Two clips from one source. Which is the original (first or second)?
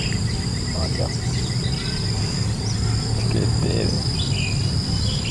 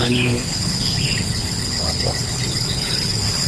first